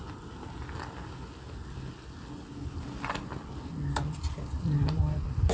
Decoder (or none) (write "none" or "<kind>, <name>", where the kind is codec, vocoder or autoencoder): none